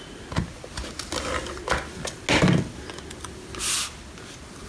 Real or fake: real